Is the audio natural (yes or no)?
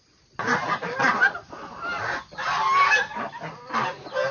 yes